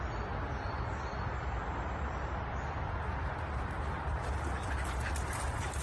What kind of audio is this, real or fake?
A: real